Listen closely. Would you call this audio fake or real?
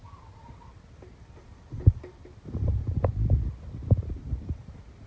real